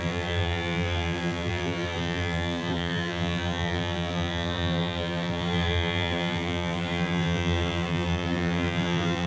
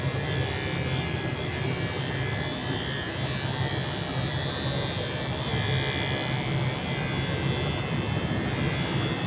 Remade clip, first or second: first